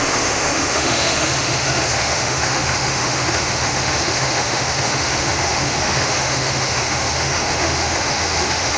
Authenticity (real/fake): fake